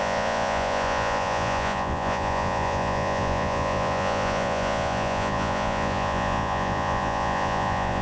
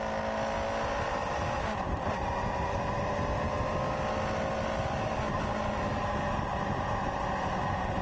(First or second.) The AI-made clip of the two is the first